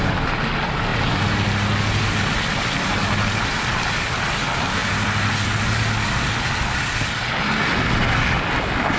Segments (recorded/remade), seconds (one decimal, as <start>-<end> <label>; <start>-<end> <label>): 0.0-9.0 recorded